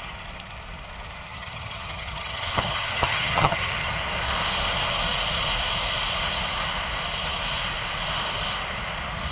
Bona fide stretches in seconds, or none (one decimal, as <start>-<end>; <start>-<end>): 0.0-1.3; 4.0-9.3

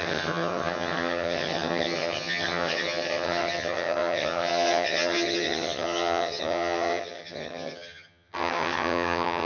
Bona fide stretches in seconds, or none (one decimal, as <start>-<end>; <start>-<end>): none

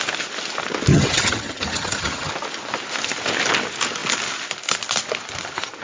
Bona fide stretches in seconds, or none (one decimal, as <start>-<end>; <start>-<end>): 0.0-0.9; 2.3-5.8

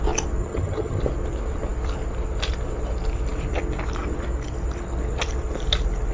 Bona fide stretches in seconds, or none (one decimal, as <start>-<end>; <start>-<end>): 0.0-0.4; 1.0-6.1

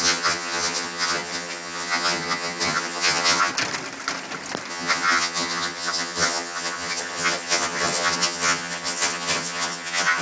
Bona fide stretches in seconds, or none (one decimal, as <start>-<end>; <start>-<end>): 3.5-4.7

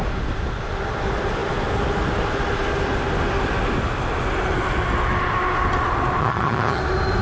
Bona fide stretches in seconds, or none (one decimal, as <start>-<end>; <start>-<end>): 0.0-6.2; 6.8-7.2

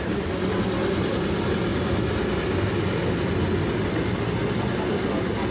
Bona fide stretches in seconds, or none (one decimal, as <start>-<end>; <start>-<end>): 0.0-5.5

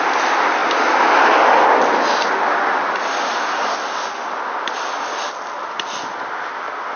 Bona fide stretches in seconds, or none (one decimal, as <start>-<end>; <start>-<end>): 0.0-7.0